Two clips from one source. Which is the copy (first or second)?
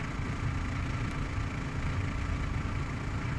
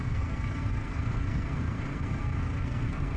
second